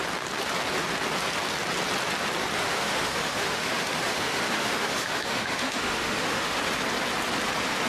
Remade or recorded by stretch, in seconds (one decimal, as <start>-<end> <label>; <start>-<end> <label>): 0.0-2.6 recorded; 2.6-6.6 remade; 6.6-7.9 recorded